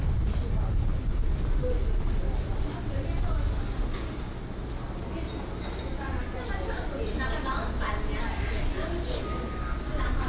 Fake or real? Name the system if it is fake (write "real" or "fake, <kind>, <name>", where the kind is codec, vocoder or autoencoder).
real